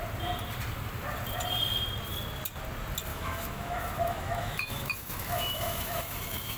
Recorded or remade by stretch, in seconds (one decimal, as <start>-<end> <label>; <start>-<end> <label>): 0.0-3.1 recorded; 3.1-6.6 remade